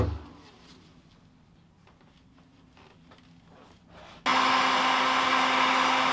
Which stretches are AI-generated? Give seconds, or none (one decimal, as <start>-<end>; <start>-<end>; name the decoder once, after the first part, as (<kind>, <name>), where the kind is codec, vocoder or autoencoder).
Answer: none